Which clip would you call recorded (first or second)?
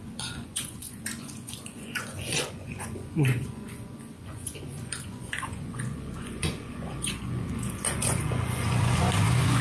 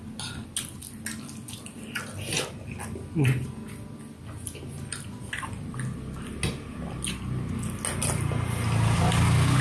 second